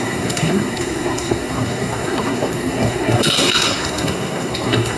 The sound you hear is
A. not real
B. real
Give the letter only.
A